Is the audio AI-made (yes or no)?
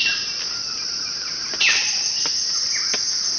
no